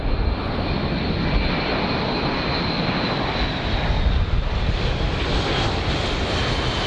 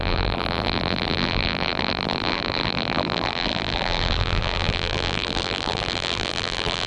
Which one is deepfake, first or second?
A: second